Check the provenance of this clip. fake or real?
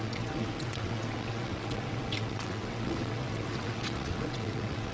fake